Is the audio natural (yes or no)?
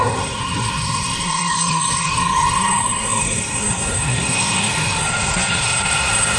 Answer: no